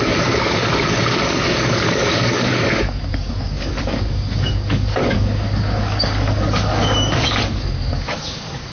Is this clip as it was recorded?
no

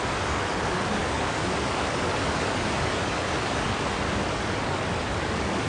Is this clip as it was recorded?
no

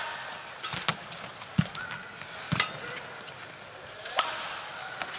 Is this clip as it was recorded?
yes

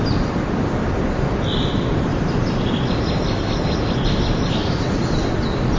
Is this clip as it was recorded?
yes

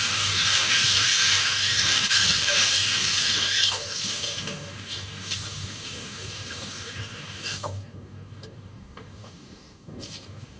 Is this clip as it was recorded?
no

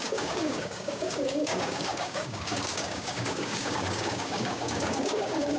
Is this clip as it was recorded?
no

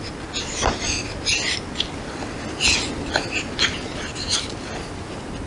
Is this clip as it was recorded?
yes